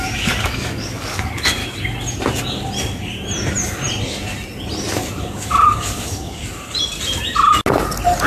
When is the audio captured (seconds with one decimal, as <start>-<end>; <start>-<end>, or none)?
1.6-5.2; 6.4-8.3